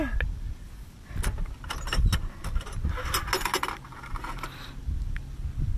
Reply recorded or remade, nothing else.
recorded